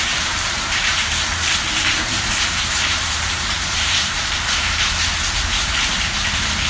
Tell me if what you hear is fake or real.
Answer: fake